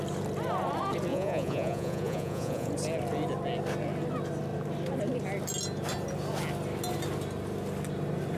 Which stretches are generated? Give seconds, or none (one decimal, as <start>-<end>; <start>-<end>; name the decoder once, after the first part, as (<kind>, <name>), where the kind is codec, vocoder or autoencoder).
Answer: 1.1-2.7 (vocoder, Vocos)